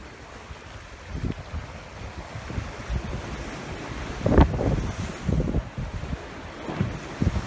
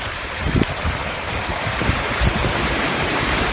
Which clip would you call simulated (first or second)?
second